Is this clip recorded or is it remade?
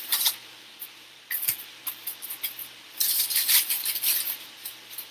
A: remade